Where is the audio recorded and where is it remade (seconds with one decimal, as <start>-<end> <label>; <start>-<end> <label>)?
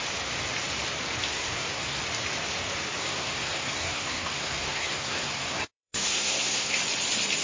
0.0-1.3 recorded; 1.3-2.0 remade; 2.0-3.0 recorded; 3.0-6.8 remade; 6.8-7.4 recorded